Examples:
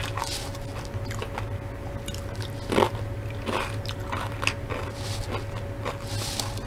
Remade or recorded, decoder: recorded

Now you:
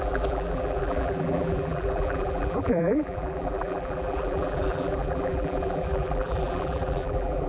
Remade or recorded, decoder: remade, vocoder, BigVGAN v2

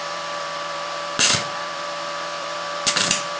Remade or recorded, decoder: remade, vocoder, BigVGAN v2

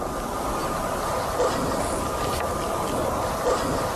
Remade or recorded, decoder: remade, vocoder, BigVGAN v2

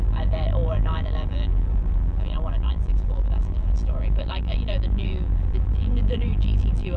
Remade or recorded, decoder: remade, vocoder, BigVGAN v2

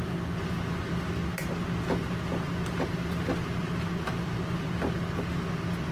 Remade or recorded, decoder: recorded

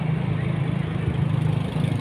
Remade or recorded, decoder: recorded